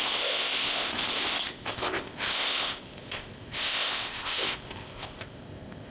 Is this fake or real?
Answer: fake